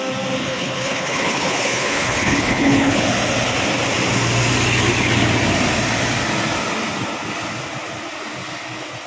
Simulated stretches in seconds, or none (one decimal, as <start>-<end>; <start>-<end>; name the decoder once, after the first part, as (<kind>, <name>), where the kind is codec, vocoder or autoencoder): 0.4-3.0 (codec, HILCodec)